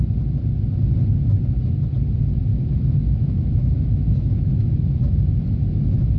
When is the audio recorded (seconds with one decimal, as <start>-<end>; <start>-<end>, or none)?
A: 0.0-2.5